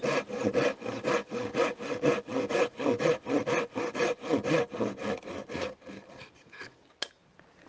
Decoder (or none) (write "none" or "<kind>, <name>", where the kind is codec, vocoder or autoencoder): none